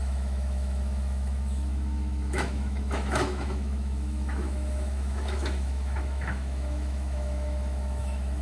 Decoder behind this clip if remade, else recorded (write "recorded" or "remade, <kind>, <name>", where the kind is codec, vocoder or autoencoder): remade, autoencoder, DAC-VAE